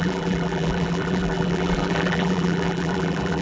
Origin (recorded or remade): remade